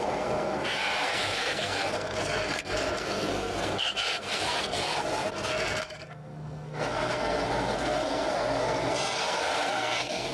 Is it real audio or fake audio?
fake